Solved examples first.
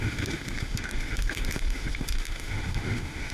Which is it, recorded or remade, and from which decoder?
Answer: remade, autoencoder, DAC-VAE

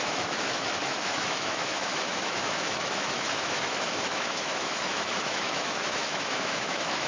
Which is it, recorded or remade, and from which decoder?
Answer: remade, autoencoder, DAC-VAE